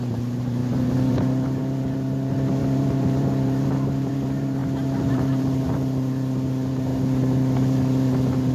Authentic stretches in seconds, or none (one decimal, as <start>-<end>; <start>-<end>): 4.6-5.1